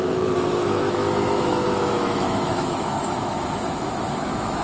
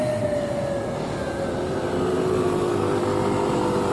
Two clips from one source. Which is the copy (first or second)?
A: first